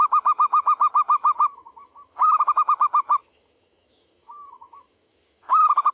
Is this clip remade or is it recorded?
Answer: remade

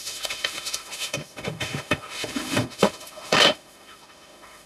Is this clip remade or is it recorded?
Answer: remade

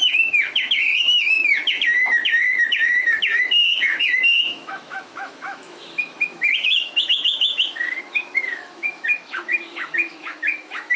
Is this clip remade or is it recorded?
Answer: remade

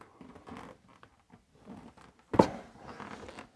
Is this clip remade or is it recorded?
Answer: recorded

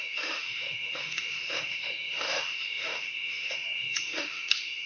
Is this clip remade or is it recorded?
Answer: remade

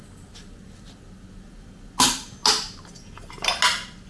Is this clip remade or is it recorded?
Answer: recorded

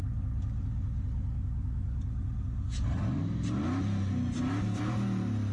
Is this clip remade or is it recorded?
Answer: recorded